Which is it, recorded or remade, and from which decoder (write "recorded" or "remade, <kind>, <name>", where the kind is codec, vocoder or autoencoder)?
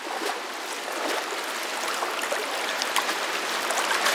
recorded